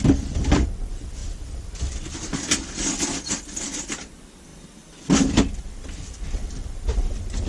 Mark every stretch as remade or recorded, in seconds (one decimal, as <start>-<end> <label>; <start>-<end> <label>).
0.0-4.5 remade; 4.5-5.3 recorded; 5.3-7.5 remade